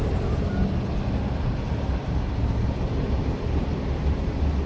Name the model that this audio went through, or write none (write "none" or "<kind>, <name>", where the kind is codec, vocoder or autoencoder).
none